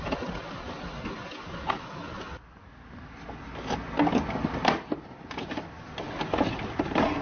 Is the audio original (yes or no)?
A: yes